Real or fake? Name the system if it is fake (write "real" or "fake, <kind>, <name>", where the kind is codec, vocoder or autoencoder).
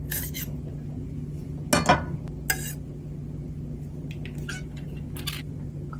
real